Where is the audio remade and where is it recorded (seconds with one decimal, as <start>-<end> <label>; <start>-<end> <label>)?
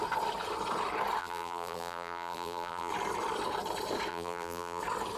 0.0-1.2 recorded; 1.2-2.9 remade; 2.9-4.1 recorded; 4.1-4.8 remade; 4.8-5.2 recorded